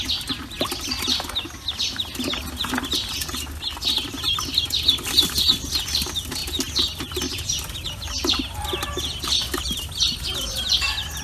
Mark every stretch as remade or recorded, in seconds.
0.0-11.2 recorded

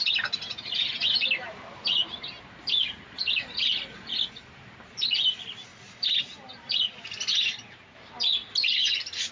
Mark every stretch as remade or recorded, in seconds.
0.0-9.3 recorded

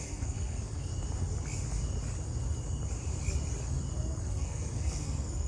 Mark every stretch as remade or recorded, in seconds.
0.0-0.9 remade; 0.9-4.2 recorded; 4.2-5.5 remade

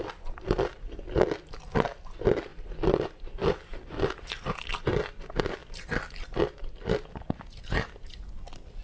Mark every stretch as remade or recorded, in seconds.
0.0-8.8 recorded

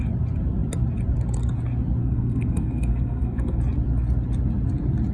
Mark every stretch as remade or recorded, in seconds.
0.0-2.0 recorded; 2.0-3.6 remade; 3.6-5.1 recorded

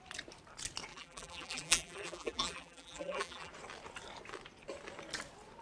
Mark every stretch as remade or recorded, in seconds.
0.0-0.9 recorded; 0.9-3.5 remade; 3.5-5.6 recorded

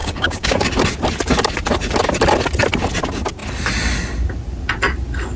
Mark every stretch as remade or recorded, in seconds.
0.0-0.7 remade; 0.7-5.4 recorded